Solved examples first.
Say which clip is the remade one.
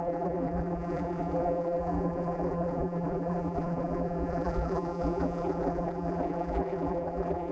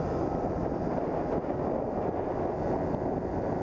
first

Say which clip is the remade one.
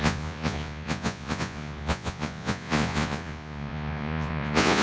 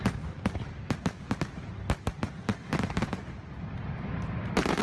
first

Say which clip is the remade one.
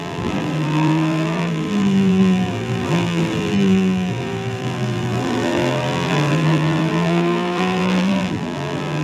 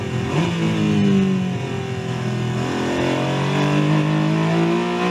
first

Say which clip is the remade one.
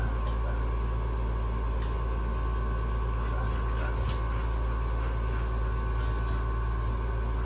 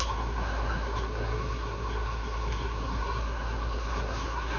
second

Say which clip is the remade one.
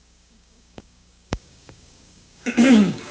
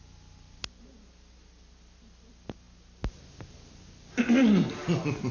first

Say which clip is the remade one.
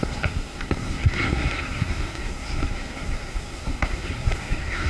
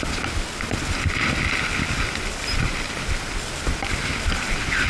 first